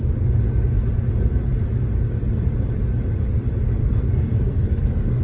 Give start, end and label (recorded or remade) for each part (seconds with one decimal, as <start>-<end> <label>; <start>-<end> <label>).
0.0-3.8 recorded; 3.8-5.2 remade